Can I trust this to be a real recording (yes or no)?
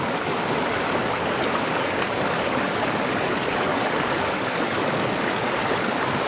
no